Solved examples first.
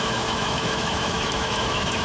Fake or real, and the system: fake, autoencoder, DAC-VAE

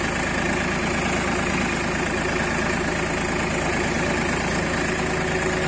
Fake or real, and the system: real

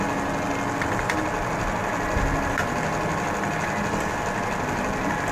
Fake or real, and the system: real